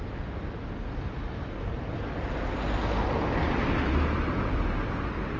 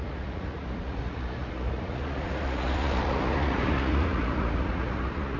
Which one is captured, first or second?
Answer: first